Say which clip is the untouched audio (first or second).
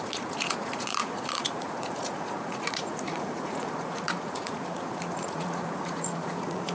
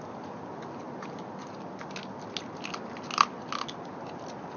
second